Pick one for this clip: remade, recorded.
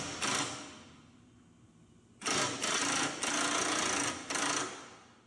recorded